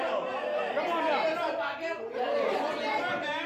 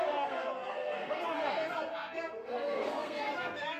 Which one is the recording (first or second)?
first